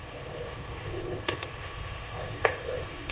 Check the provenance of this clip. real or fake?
fake